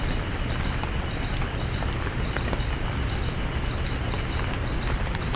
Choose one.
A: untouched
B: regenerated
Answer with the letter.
A